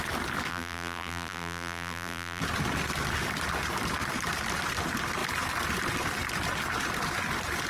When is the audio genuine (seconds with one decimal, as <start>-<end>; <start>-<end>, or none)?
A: 0.0-0.5; 2.4-7.7